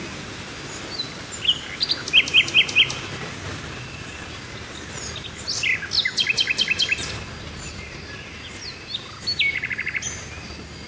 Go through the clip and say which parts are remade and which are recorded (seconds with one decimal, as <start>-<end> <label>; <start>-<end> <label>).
0.0-10.9 recorded